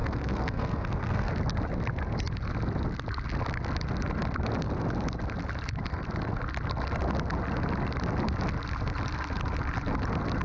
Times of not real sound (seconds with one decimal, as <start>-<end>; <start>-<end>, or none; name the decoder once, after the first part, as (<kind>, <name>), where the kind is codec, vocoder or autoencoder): 0.0-1.3 (codec, SNAC)